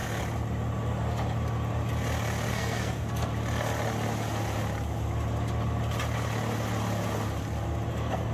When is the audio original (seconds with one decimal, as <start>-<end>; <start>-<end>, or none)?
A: 0.0-2.5; 3.3-7.9